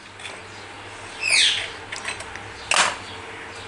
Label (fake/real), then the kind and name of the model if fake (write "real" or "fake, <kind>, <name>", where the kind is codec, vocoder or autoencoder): real